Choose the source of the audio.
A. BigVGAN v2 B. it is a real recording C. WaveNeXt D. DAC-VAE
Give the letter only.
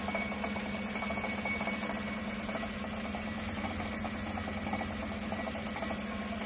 B